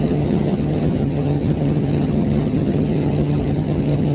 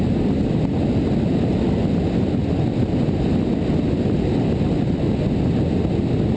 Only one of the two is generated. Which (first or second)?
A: first